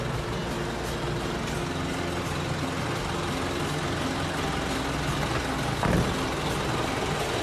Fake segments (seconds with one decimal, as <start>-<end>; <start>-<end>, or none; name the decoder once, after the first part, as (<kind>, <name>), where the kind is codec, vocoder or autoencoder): none